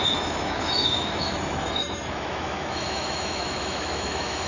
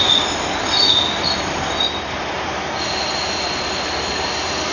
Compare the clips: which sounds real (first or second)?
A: second